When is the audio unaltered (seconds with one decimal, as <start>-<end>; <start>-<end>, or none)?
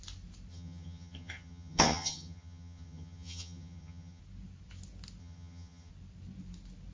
0.0-0.5; 4.2-5.2; 5.9-6.9